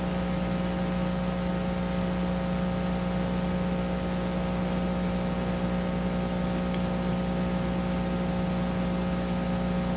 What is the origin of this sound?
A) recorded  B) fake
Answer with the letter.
A